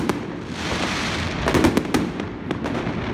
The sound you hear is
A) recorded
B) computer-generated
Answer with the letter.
B